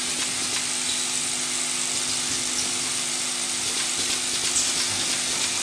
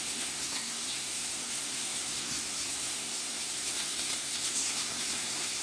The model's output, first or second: second